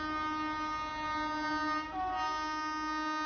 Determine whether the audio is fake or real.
real